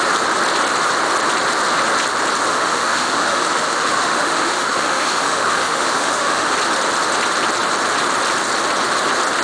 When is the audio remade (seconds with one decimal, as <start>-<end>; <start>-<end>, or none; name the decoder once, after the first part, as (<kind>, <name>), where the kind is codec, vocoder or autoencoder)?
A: 2.5-6.5 (autoencoder, DAC-VAE)